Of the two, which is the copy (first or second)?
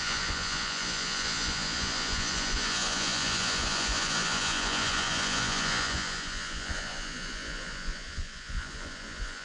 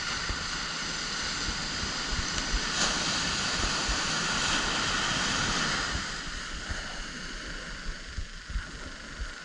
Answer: first